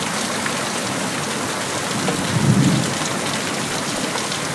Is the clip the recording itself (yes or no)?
yes